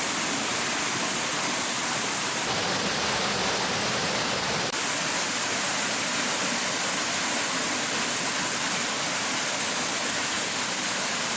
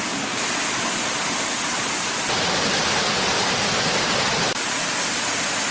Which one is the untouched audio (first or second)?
second